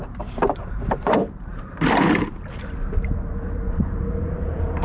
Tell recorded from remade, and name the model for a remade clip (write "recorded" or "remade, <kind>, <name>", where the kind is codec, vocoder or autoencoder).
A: remade, vocoder, BigVGAN v2